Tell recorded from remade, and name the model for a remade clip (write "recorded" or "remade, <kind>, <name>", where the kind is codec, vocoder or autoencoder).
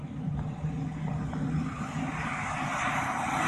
recorded